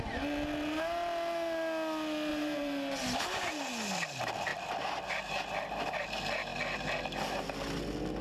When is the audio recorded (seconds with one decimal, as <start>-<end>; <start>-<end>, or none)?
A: 0.0-2.3; 3.5-8.2

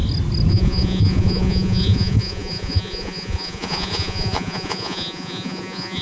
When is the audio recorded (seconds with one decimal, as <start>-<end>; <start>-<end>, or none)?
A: 0.0-0.5